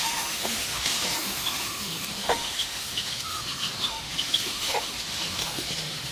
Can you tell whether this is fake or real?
fake